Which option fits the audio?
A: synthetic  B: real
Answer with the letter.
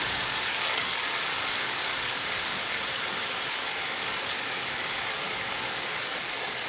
A